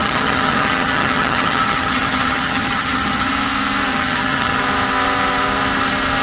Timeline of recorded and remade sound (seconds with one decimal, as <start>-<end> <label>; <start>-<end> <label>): 0.0-3.3 remade; 3.3-3.9 recorded; 3.9-4.6 remade; 4.6-6.2 recorded